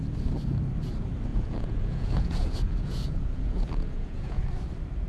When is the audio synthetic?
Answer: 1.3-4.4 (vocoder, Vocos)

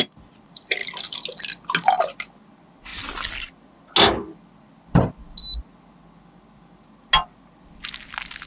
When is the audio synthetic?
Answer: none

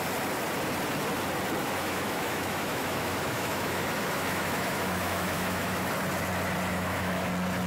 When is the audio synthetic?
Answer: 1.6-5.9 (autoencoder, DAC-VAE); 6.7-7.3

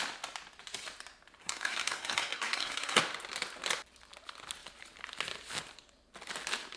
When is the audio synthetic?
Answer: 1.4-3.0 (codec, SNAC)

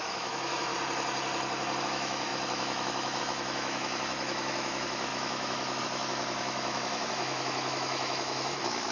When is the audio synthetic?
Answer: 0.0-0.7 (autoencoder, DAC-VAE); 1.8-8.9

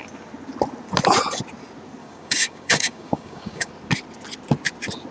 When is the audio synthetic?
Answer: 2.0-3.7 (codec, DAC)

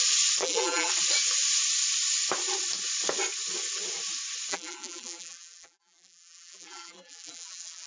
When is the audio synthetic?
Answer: 0.4-0.9 (vocoder, BigVGAN v2); 4.5-7.9